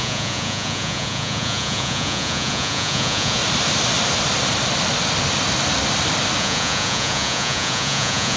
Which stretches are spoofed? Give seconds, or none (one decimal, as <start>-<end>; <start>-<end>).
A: 0.0-3.4; 6.4-8.4